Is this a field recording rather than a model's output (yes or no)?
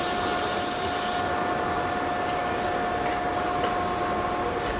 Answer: yes